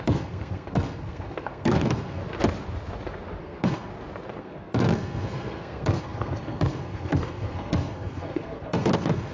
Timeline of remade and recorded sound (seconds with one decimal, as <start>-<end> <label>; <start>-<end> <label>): 0.0-2.2 remade; 2.2-3.4 recorded; 3.4-3.9 remade; 3.9-4.4 recorded; 4.4-9.3 remade